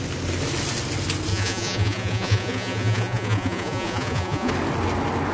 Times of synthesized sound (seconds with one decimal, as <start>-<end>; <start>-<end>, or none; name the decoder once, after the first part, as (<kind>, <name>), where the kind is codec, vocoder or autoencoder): 1.3-4.5 (vocoder, Vocos)